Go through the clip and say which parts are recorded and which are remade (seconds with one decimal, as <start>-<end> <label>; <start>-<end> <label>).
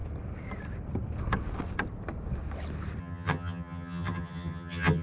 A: 0.0-3.0 recorded; 3.0-5.0 remade